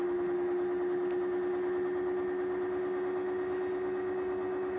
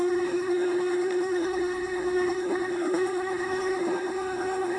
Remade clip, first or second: second